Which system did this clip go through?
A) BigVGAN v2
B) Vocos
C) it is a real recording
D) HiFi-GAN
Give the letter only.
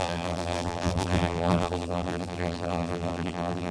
A